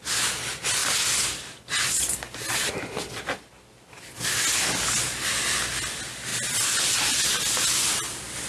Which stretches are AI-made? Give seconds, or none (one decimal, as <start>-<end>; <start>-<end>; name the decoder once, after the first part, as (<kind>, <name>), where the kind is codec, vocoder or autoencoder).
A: none